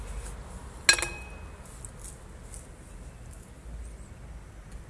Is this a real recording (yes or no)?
yes